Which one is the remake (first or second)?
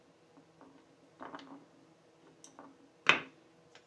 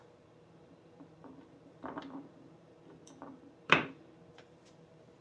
second